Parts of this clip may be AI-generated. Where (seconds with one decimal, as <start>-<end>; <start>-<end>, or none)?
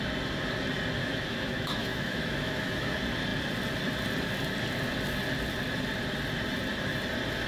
1.0-2.9